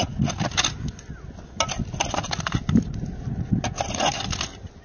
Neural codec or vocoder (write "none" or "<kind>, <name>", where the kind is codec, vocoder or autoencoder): none